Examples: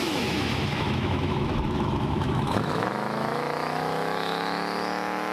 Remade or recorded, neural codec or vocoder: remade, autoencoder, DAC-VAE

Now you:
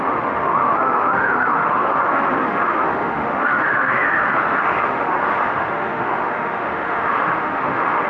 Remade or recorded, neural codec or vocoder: remade, autoencoder, DAC-VAE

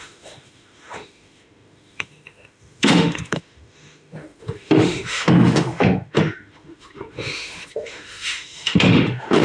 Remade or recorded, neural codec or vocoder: remade, autoencoder, DAC-VAE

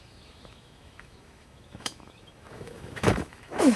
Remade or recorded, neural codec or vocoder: remade, autoencoder, DAC-VAE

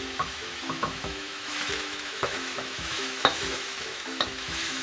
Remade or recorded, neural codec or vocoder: remade, autoencoder, DAC-VAE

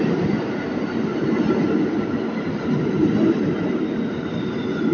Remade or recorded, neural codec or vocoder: recorded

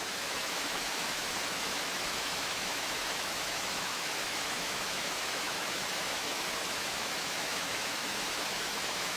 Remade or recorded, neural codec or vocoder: remade, autoencoder, DAC-VAE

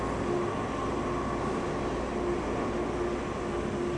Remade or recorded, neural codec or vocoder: recorded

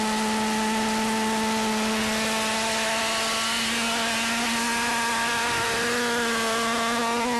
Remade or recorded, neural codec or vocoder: recorded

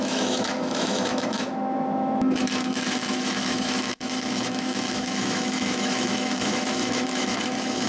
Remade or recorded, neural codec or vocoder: remade, autoencoder, DAC-VAE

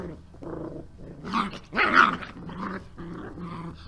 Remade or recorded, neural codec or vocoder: recorded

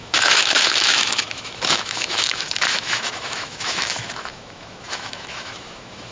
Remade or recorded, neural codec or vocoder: remade, autoencoder, DAC-VAE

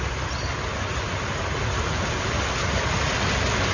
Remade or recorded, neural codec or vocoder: recorded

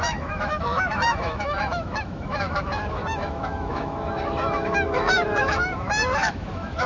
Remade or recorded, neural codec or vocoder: remade, autoencoder, DAC-VAE